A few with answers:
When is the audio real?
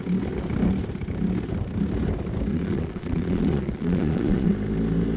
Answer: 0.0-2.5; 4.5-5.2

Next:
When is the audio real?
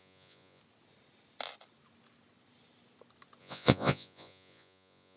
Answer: 0.6-3.4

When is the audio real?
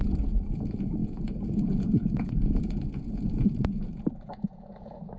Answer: none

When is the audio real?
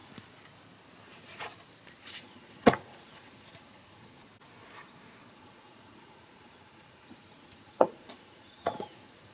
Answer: 0.0-1.0; 1.5-2.0; 4.2-5.3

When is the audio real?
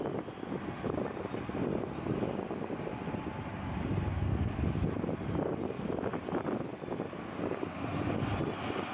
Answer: 0.0-8.9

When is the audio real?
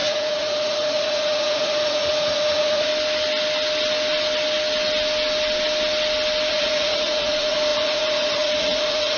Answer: 2.9-6.5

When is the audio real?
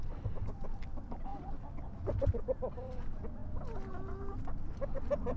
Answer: 0.0-5.4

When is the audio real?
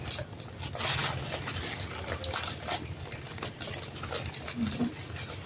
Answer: 0.0-5.5